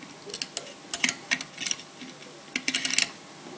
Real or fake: real